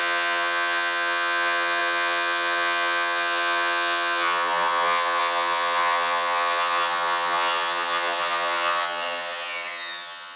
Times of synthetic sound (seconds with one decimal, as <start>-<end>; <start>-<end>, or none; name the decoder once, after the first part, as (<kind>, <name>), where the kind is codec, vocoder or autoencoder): 0.0-10.4 (vocoder, HiFi-GAN)